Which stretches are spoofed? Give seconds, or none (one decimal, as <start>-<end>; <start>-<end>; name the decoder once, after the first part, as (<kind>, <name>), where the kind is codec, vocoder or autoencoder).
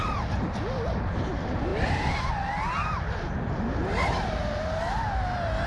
none